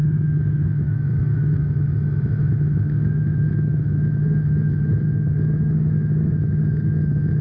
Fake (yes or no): yes